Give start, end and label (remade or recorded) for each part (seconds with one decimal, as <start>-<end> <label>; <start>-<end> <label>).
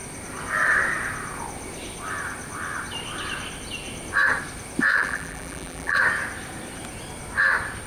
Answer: 0.0-4.9 recorded; 4.9-6.0 remade; 6.0-7.9 recorded